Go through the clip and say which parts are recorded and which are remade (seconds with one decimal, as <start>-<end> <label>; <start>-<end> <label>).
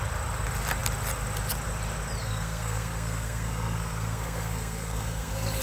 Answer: 0.0-2.2 recorded; 2.2-5.6 remade